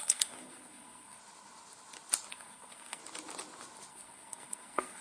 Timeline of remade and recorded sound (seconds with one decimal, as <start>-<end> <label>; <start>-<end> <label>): 0.0-1.2 remade; 1.2-2.3 recorded; 2.3-3.0 remade; 3.0-3.9 recorded; 3.9-5.0 remade